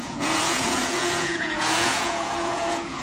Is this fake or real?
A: fake